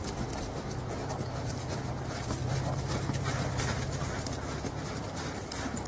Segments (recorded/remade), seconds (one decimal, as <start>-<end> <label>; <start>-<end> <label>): 0.0-1.0 recorded; 1.0-1.9 remade; 1.9-2.4 recorded; 2.4-5.9 remade